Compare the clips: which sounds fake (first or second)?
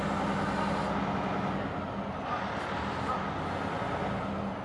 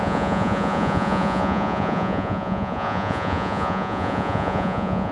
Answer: second